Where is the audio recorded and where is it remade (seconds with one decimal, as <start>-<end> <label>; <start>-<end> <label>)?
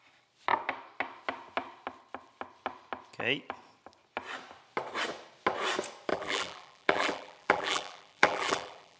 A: 0.0-6.1 recorded; 6.1-9.0 remade